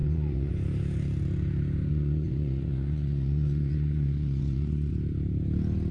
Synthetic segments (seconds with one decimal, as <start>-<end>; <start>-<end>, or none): 0.0-0.5; 1.9-4.9